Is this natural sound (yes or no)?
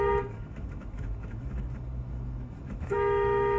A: no